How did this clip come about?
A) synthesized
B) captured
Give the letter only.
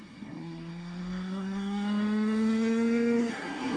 A